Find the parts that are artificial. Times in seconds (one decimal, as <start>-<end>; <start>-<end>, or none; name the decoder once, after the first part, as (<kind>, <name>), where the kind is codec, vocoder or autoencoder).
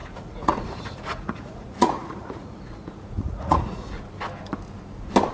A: 0.0-3.9 (vocoder, Vocos)